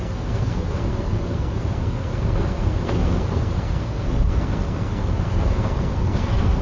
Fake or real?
fake